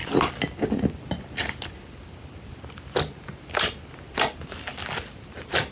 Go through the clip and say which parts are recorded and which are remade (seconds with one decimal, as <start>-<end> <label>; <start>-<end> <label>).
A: 0.0-3.2 remade; 3.2-5.7 recorded